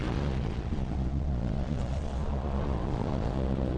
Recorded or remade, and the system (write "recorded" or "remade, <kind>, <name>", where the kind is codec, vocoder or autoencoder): remade, vocoder, Vocos